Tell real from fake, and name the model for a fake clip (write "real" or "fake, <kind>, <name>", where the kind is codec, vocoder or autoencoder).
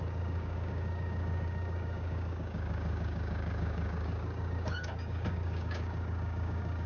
fake, codec, DAC